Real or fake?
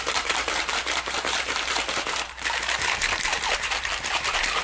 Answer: fake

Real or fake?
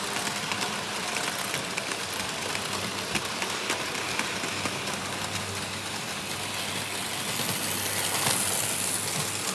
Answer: real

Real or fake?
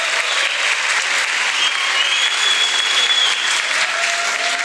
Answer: real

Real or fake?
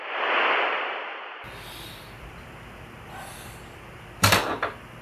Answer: fake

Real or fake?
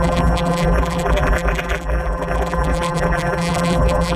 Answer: fake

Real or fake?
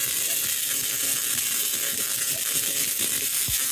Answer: fake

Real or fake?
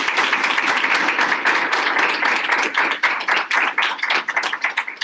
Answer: real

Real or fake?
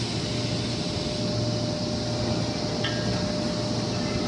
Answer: real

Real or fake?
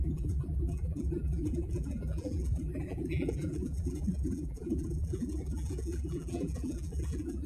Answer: fake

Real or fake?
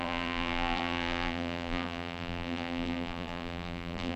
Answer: fake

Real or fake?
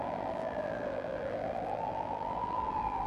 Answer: fake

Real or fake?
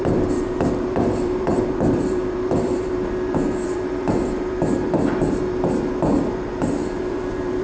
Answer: fake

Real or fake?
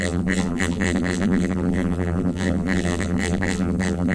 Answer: fake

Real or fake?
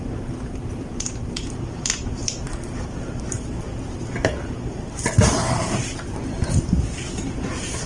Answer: fake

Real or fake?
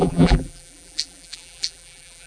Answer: fake